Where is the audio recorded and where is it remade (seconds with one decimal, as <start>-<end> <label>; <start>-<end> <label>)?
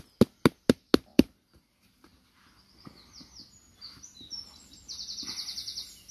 0.0-1.1 recorded; 1.1-1.6 remade; 1.6-6.1 recorded